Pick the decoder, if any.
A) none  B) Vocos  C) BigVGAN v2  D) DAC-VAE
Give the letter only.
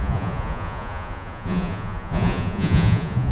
B